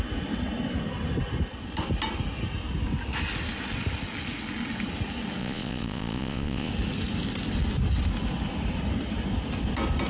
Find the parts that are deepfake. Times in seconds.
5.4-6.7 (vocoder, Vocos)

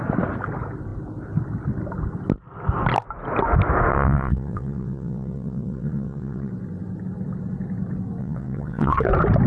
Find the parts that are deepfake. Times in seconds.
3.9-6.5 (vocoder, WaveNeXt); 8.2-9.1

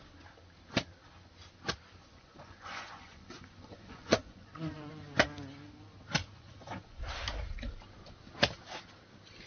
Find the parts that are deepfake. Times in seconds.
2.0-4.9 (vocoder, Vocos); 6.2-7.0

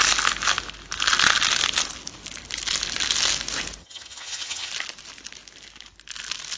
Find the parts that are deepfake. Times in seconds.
3.8-4.7 (vocoder, HiFi-GAN)

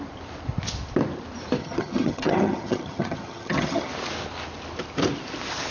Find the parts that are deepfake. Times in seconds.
1.6-3.9 (vocoder, HiFi-GAN)

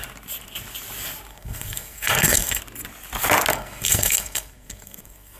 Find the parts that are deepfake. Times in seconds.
1.3-2.6 (codec, SNAC); 3.5-5.4

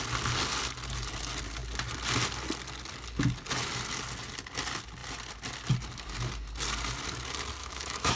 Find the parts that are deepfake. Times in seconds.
7.6-8.2 (autoencoder, DAC-VAE)

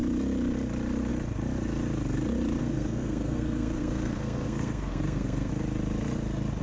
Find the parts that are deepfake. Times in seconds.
2.6-5.5 (codec, SNAC)